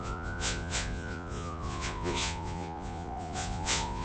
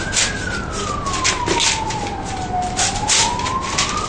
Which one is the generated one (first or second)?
first